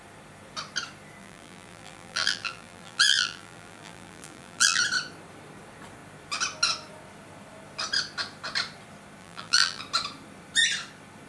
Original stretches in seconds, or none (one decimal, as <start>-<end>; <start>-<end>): 0.0-1.2; 4.8-9.2; 9.8-11.3